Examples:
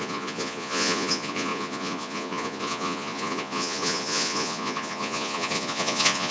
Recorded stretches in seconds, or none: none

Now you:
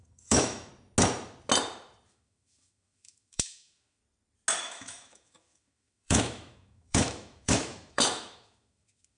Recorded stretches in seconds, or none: 0.7-2.1; 4.0-4.6